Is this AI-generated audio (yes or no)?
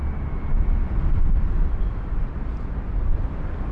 no